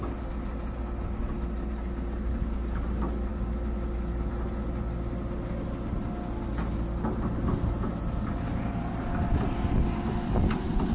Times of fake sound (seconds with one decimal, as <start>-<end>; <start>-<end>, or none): none